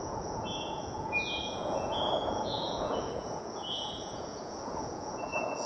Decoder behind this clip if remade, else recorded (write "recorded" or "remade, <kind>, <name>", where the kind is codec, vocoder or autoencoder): remade, vocoder, Vocos